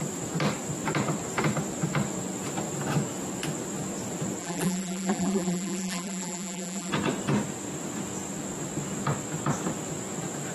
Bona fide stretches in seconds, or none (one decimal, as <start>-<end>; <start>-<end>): 0.0-4.4; 6.9-10.5